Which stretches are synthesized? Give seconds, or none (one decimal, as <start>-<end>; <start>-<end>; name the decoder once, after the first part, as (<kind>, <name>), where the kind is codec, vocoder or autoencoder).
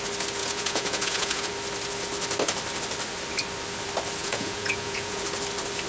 0.4-1.5 (vocoder, Vocos); 4.2-5.2